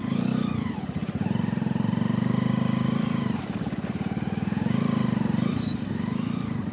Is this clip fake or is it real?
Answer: real